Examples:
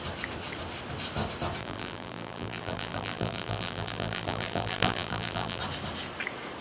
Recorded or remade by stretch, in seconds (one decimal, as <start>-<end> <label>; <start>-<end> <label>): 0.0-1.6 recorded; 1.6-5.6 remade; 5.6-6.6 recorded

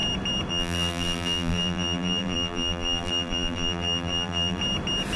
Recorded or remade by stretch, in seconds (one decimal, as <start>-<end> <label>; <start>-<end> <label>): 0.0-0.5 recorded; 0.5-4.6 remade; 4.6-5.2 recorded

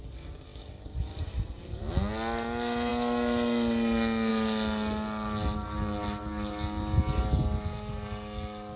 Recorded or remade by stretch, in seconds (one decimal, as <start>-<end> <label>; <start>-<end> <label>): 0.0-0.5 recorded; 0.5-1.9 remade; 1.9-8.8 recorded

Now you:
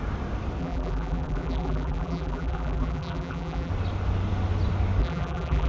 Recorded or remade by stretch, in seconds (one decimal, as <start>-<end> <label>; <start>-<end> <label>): 0.0-0.6 recorded; 0.6-3.7 remade; 3.7-5.0 recorded; 5.0-5.7 remade

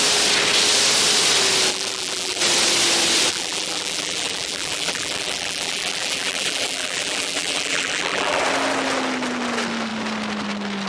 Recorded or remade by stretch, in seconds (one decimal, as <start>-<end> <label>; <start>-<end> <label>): 0.0-1.7 recorded; 1.7-2.4 remade; 2.4-3.3 recorded; 3.3-8.4 remade; 8.4-10.9 recorded

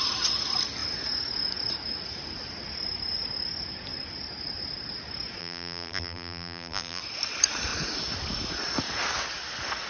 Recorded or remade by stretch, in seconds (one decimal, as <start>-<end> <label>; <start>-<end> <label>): 0.0-5.4 recorded; 5.4-7.0 remade; 7.0-9.9 recorded

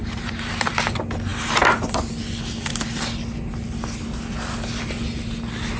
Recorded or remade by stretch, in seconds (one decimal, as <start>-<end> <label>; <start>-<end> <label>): 0.0-0.7 remade; 0.7-5.8 recorded

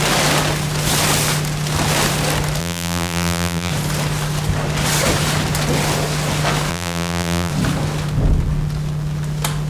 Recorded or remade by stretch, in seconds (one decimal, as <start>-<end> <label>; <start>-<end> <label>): 0.0-2.6 recorded; 2.6-3.7 remade; 3.7-6.7 recorded; 6.7-7.5 remade; 7.5-9.7 recorded